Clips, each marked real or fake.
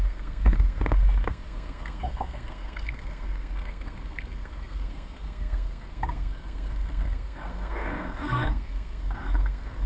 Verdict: fake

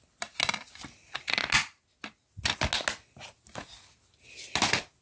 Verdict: real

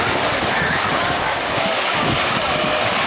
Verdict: fake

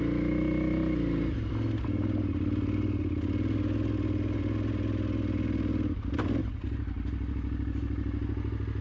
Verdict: real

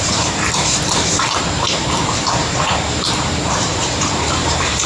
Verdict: fake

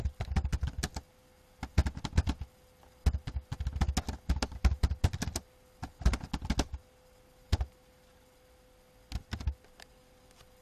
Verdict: real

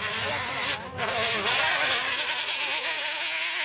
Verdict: real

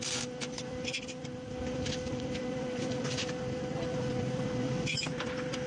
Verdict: fake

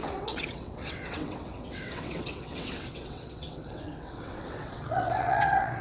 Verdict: fake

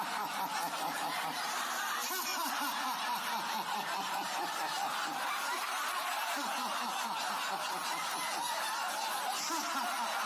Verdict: real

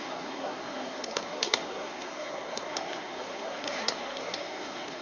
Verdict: fake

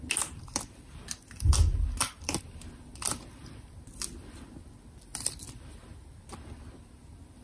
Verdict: fake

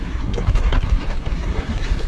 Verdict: fake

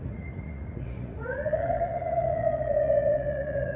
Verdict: fake